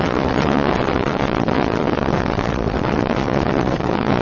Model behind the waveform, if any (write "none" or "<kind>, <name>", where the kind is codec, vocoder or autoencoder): vocoder, WaveNeXt